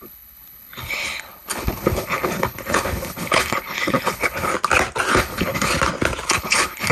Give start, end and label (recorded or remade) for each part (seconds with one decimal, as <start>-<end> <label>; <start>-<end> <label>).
0.0-4.5 remade; 4.5-5.1 recorded; 5.1-5.7 remade; 5.7-6.3 recorded; 6.3-6.9 remade